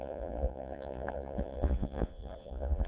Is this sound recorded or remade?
remade